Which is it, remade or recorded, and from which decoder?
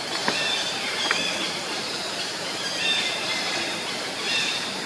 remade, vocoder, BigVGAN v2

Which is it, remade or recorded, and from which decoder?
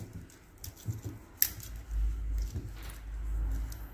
recorded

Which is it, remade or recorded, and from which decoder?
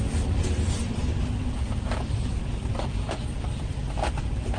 remade, vocoder, BigVGAN v2